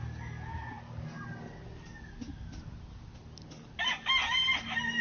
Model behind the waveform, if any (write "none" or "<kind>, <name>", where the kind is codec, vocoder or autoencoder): none